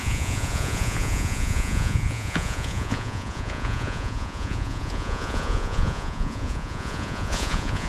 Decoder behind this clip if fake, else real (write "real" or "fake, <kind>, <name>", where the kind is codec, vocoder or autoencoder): fake, vocoder, Vocos